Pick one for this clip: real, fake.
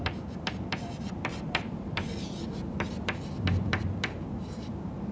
fake